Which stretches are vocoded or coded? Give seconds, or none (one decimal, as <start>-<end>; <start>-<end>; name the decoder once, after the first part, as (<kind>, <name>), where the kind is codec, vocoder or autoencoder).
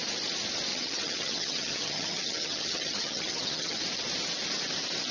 0.7-3.8 (vocoder, HiFi-GAN)